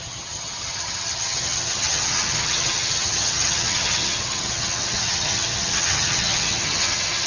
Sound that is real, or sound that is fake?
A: fake